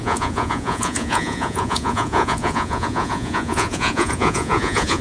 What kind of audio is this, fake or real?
fake